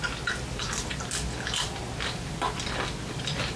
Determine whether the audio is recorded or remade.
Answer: recorded